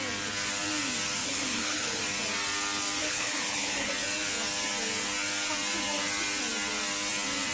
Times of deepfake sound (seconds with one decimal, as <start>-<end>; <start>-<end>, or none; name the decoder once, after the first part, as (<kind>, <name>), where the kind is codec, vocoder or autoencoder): 1.2-2.0 (codec, HILCodec); 3.0-3.9